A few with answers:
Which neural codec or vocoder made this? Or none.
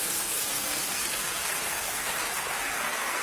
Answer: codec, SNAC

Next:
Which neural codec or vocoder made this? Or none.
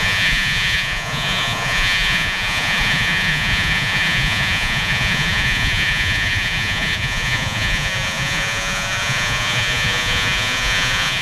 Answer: vocoder, Vocos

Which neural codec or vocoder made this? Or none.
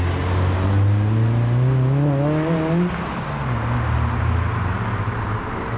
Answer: none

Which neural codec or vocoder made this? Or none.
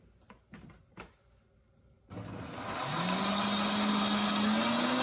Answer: none